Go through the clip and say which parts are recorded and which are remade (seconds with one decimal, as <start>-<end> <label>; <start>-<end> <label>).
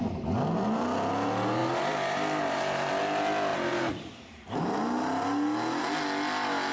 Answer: 0.0-1.6 recorded; 1.6-2.9 remade; 2.9-3.5 recorded; 3.5-4.6 remade; 4.6-6.7 recorded